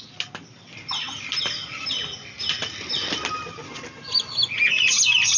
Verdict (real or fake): real